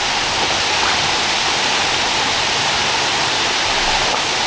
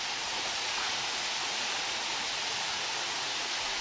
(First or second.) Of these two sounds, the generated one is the second